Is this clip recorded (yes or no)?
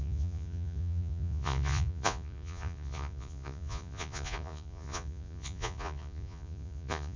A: no